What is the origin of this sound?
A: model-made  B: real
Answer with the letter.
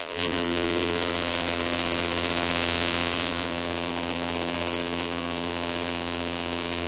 A